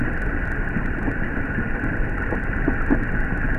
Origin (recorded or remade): recorded